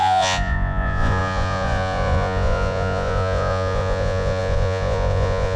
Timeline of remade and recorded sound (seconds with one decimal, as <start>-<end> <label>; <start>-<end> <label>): 0.0-5.6 remade